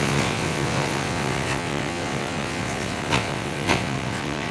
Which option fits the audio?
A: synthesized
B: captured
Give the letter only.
A